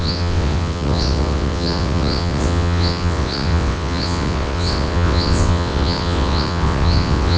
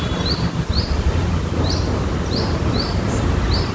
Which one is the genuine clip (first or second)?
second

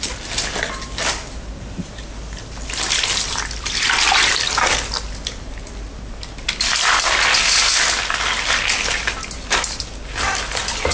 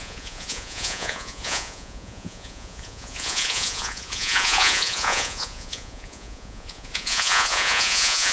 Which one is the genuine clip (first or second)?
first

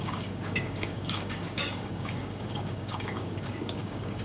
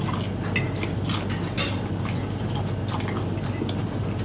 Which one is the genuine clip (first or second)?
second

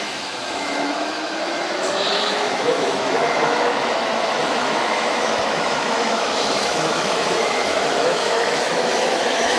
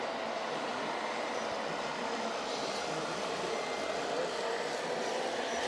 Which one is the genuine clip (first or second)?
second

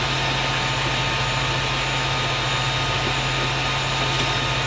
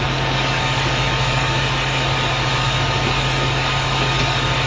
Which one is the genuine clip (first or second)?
first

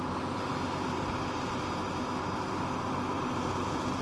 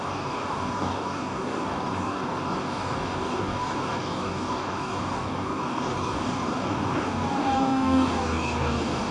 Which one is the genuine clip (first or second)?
first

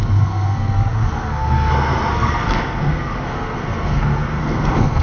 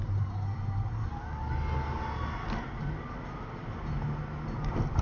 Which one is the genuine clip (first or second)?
second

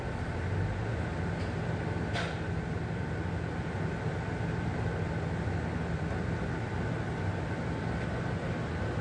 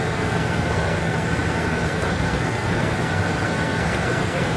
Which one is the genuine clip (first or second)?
first